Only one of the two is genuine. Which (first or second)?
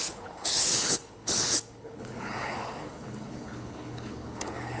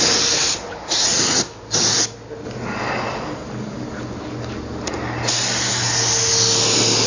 second